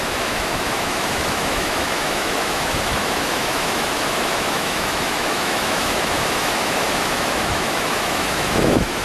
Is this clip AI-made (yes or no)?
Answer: yes